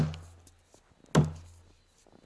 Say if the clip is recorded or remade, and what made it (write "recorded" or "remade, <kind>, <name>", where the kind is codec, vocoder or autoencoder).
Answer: recorded